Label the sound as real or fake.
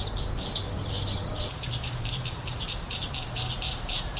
fake